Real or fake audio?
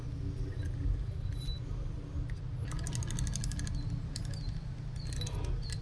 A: real